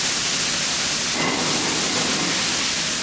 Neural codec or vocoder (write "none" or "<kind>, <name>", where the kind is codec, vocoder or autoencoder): none